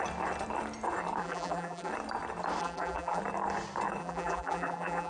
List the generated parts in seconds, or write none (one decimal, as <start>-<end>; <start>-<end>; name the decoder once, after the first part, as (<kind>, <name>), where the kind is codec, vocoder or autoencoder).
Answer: 1.2-1.9 (vocoder, BigVGAN v2); 2.6-3.2; 4.0-5.1